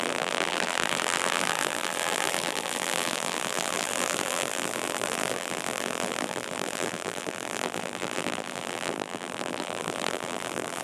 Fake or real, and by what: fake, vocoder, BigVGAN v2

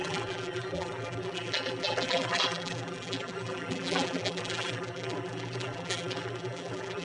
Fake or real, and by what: fake, vocoder, BigVGAN v2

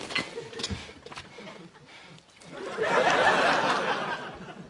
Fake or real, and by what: real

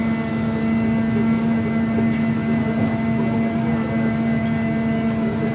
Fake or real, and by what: real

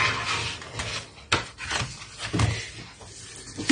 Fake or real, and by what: real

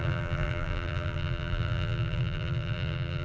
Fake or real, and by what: fake, vocoder, BigVGAN v2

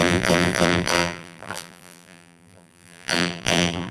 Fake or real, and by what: fake, vocoder, BigVGAN v2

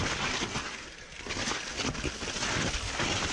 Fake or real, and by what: real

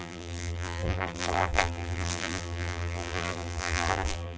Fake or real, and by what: fake, vocoder, BigVGAN v2